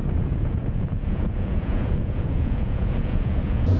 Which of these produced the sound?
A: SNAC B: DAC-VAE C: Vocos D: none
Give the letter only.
C